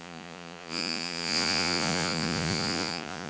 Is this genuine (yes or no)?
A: no